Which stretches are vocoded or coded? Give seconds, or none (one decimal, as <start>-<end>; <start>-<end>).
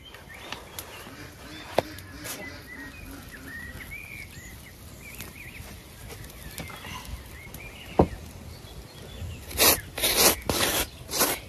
4.7-5.6